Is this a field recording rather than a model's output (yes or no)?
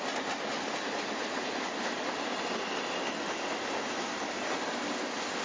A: yes